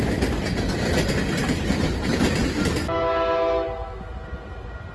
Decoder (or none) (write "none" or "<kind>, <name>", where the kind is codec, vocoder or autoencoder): none